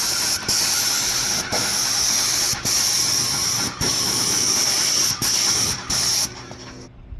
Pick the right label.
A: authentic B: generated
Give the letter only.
A